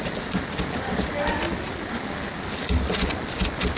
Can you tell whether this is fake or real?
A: real